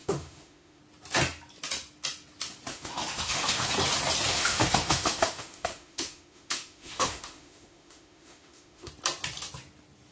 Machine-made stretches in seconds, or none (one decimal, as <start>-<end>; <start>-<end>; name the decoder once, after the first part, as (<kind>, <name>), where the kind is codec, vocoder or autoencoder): 0.0-0.8 (autoencoder, DAC-VAE); 2.7-3.7; 4.3-8.9